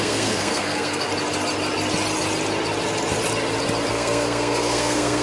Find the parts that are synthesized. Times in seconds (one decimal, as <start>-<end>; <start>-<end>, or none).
0.0-1.1; 3.9-5.2